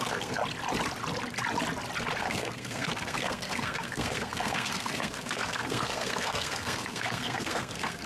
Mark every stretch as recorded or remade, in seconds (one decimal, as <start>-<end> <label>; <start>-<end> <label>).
0.0-0.4 remade; 0.4-2.2 recorded; 2.2-8.1 remade

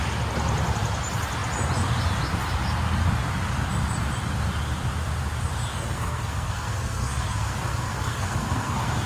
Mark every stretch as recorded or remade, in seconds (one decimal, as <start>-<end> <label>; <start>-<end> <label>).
0.0-5.7 recorded; 5.7-9.1 remade